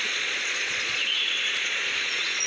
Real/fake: fake